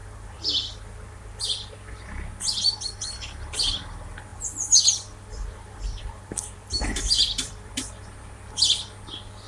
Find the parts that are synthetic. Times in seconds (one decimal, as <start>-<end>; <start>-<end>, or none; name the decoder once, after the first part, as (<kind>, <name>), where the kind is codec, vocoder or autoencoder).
0.0-1.4 (vocoder, BigVGAN v2); 4.3-7.7